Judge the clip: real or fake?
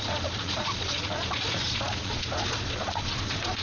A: fake